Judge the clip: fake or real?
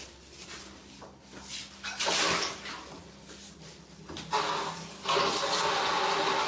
real